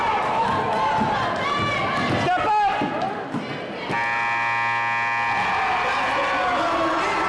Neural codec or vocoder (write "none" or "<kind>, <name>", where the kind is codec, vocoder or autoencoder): none